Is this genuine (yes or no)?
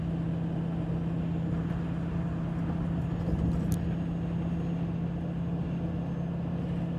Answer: yes